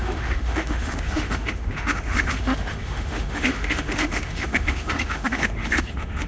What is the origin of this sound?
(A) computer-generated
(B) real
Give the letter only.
A